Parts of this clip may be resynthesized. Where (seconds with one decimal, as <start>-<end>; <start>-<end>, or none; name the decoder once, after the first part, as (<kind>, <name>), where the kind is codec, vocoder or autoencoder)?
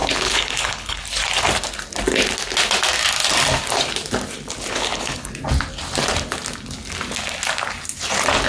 0.0-1.0 (codec, HILCodec); 4.7-5.3